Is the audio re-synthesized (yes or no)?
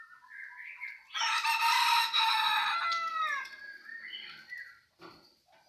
no